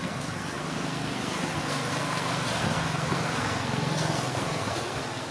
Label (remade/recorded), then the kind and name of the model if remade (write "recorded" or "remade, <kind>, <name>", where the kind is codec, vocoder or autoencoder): remade, codec, SNAC